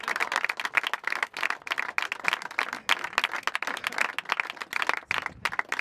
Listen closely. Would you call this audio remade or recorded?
recorded